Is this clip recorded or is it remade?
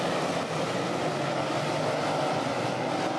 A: recorded